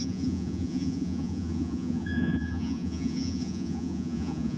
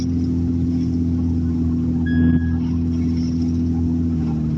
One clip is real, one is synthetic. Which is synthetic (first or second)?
first